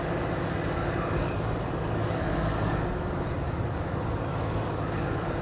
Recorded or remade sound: remade